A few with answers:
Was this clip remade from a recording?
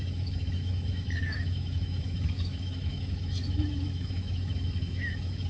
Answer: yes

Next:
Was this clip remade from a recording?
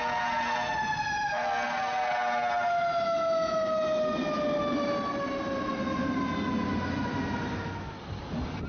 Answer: no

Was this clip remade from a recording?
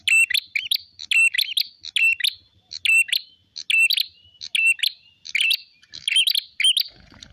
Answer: no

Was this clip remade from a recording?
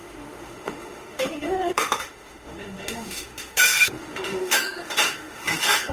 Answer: yes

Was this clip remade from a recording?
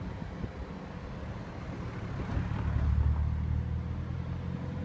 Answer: no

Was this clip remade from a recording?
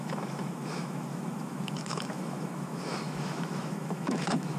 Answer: yes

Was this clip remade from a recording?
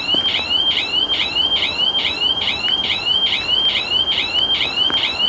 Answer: no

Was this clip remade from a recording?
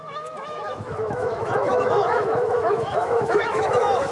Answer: yes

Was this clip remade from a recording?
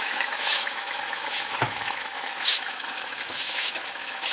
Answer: yes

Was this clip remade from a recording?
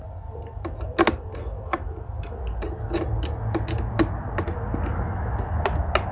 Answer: no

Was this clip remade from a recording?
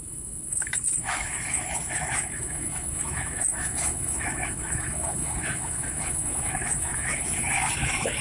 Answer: yes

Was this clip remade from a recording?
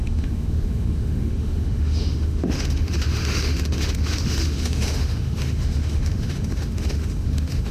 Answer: yes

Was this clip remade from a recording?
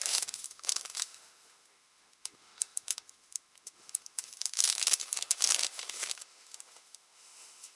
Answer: yes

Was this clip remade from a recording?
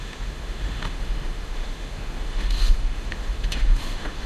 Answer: yes